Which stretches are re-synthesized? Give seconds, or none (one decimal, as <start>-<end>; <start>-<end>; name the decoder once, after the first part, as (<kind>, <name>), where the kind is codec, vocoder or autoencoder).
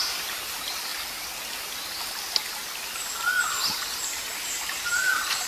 none